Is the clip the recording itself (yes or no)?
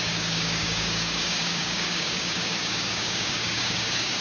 no